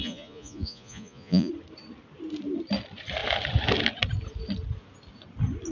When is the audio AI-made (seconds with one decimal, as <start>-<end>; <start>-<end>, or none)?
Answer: 0.0-1.5